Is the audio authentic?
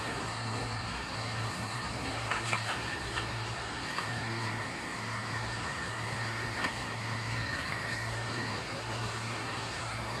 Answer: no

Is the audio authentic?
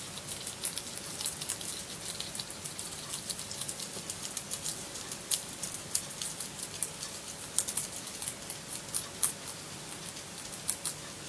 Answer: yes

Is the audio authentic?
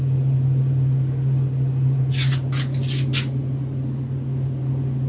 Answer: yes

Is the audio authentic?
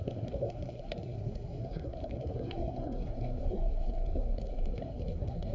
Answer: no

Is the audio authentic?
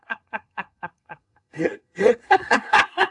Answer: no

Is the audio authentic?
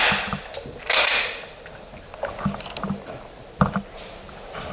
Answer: yes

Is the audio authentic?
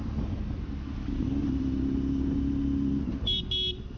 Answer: yes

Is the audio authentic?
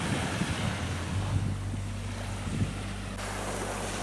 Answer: yes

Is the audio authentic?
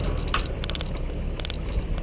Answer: yes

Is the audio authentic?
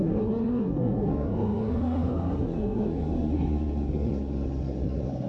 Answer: no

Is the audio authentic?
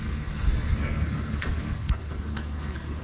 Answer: no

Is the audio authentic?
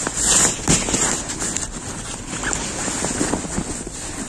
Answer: yes